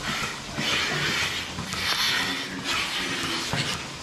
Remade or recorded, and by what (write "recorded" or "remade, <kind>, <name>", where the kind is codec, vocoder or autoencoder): recorded